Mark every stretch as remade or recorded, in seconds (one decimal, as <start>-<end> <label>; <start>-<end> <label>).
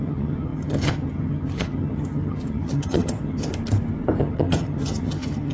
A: 0.0-3.5 remade; 3.5-4.2 recorded; 4.2-5.5 remade